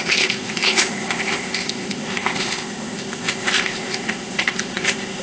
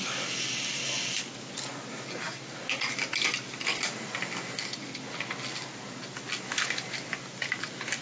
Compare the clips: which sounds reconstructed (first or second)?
first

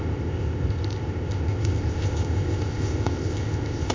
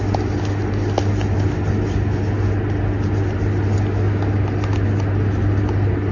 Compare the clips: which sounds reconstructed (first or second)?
first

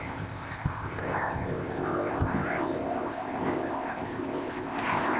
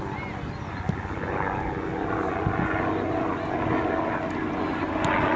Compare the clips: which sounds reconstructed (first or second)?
first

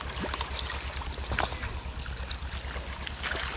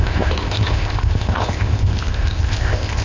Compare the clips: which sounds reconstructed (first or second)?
second